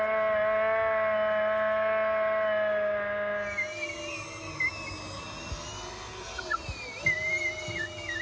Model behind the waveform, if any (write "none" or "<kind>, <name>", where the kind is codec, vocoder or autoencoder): none